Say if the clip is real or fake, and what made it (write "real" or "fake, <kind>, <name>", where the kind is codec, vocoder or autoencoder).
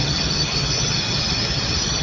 fake, vocoder, HiFi-GAN